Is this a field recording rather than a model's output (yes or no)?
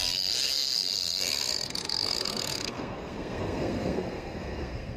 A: no